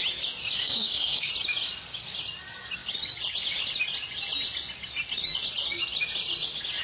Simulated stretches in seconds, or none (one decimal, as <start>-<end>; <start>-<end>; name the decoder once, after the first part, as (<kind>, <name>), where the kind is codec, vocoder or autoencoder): 0.6-1.3 (codec, SNAC)

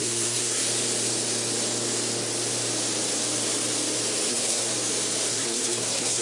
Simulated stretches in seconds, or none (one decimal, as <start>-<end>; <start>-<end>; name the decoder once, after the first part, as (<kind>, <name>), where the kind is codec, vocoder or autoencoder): 0.0-0.6 (codec, SNAC); 4.3-4.7; 5.3-6.2

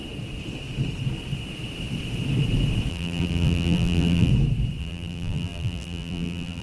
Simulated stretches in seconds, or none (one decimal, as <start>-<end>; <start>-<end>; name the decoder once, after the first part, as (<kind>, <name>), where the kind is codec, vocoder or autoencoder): 2.9-4.3 (vocoder, BigVGAN v2); 4.8-6.6

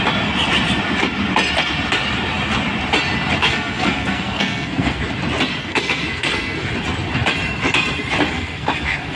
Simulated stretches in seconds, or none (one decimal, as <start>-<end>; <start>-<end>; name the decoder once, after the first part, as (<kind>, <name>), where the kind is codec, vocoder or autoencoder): 3.4-5.0 (codec, SNAC); 5.6-6.7; 8.3-9.2

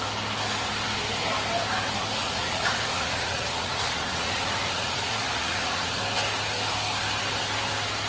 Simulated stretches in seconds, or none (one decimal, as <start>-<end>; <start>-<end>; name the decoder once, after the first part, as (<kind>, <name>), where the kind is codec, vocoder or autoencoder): 2.2-6.0 (vocoder, Vocos)